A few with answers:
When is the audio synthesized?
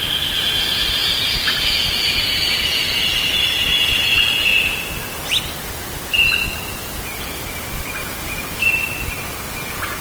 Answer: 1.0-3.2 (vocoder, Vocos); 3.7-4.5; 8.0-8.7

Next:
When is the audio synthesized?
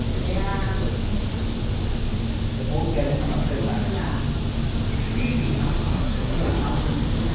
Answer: 5.9-6.6 (codec, SNAC)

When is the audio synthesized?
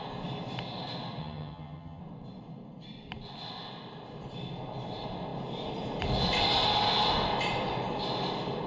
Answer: 1.2-2.0 (vocoder, HiFi-GAN)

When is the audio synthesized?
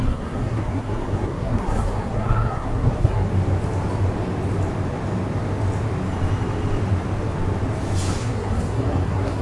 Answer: 0.0-3.3 (codec, SNAC); 8.2-9.4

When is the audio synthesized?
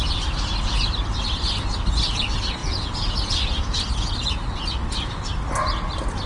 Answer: 2.6-4.1 (vocoder, Vocos)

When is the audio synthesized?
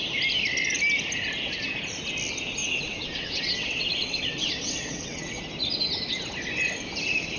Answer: 2.6-5.4 (vocoder, WaveNeXt)